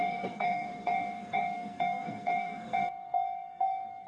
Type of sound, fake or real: fake